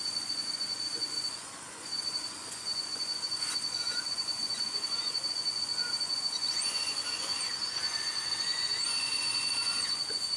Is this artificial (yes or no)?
yes